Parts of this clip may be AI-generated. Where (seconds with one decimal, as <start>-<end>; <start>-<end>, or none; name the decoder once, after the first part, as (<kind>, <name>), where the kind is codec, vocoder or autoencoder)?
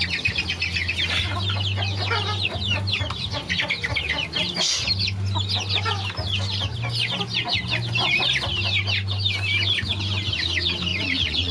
10.9-11.5 (vocoder, Vocos)